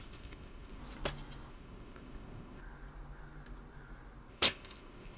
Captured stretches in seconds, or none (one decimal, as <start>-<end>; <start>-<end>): 0.8-1.5; 2.6-4.3